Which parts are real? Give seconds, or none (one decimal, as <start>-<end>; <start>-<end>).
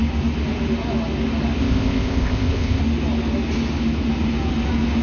0.0-1.6; 2.8-5.0